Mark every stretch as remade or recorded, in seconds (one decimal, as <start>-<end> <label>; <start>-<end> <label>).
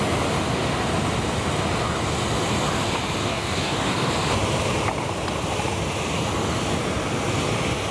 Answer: 0.0-3.2 recorded; 3.2-4.1 remade; 4.1-7.9 recorded